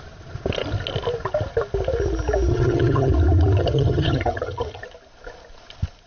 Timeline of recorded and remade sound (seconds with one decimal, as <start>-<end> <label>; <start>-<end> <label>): 0.0-2.5 recorded; 2.5-3.1 remade; 3.1-3.6 recorded; 3.6-4.8 remade; 4.8-6.1 recorded